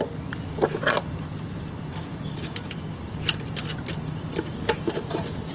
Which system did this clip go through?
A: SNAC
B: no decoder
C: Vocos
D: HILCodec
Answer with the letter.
B